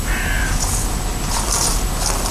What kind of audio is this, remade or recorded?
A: recorded